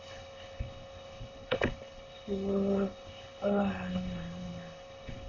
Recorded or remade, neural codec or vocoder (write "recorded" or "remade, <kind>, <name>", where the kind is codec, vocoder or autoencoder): remade, codec, HILCodec